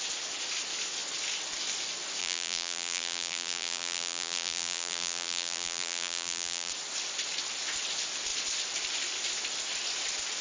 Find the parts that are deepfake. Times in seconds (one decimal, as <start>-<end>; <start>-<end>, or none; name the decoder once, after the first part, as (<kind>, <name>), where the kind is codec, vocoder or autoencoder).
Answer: 2.2-6.7 (vocoder, BigVGAN v2)